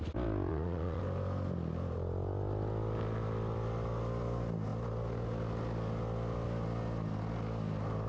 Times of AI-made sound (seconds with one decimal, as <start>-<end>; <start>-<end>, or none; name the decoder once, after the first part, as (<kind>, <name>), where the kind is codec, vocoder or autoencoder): 0.5-1.0 (vocoder, Vocos)

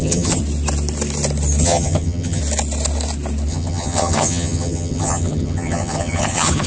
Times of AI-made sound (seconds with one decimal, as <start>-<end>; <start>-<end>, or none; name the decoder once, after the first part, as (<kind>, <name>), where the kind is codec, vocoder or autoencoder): 0.0-0.4 (vocoder, HiFi-GAN); 1.6-2.4; 3.5-6.7

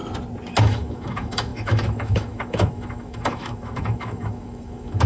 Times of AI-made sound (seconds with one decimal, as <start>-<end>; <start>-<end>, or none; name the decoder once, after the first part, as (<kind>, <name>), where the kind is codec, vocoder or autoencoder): 0.6-5.1 (autoencoder, DAC-VAE)

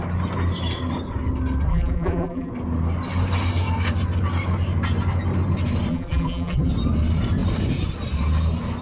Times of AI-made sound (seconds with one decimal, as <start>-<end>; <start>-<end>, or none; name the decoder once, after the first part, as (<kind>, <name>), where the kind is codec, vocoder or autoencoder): 1.7-2.5 (vocoder, BigVGAN v2); 5.9-6.7

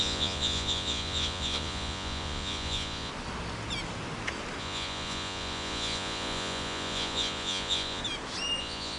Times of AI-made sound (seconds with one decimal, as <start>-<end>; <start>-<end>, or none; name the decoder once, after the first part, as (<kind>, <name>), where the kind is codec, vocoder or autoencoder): 0.0-3.1 (vocoder, Vocos); 4.6-8.0; 8.6-9.0

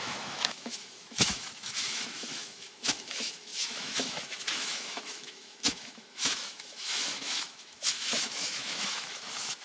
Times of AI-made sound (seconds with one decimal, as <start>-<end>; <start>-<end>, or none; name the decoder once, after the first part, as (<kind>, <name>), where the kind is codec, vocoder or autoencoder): 0.0-9.6 (autoencoder, DAC-VAE)